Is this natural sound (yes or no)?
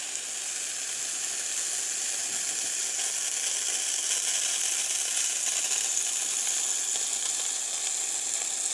yes